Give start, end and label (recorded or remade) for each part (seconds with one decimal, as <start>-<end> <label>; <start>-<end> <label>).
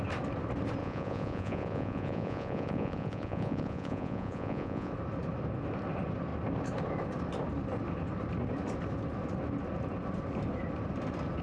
0.0-0.8 recorded; 0.8-4.9 remade; 4.9-11.4 recorded